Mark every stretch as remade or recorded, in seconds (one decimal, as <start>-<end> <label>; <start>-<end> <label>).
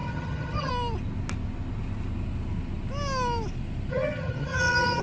0.0-0.7 remade; 0.7-3.9 recorded; 3.9-5.0 remade